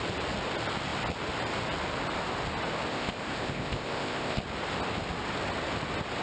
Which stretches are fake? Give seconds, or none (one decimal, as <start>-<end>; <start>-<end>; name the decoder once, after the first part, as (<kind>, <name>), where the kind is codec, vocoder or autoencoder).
2.9-4.4 (codec, ZipCodec)

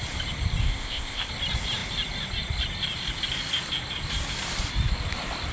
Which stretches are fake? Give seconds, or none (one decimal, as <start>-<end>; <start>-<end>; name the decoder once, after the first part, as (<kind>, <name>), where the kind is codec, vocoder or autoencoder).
0.6-1.3 (codec, ZipCodec)

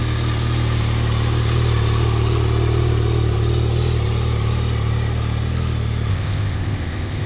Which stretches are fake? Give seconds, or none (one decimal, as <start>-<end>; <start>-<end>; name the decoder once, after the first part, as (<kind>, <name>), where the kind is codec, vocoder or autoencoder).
6.1-7.3 (codec, ZipCodec)

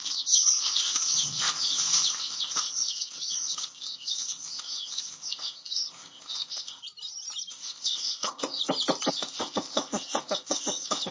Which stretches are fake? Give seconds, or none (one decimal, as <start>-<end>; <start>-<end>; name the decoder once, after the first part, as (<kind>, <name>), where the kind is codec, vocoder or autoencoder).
0.0-6.8 (codec, ZipCodec); 7.5-8.6; 9.1-11.1

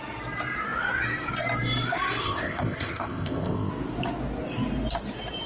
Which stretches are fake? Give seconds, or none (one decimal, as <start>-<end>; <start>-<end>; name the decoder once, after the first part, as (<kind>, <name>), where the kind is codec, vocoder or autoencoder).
2.2-3.7 (codec, ZipCodec)